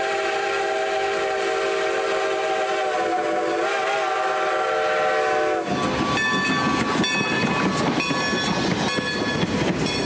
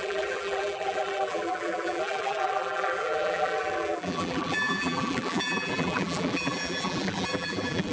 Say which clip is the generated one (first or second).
second